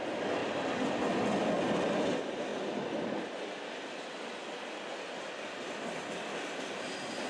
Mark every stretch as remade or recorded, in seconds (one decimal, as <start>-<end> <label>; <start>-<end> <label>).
0.0-7.3 recorded